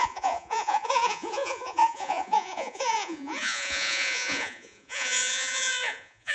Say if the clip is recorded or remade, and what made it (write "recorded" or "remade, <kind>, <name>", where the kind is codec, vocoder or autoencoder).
remade, vocoder, Vocos